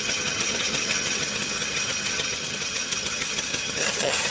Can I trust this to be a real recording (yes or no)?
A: no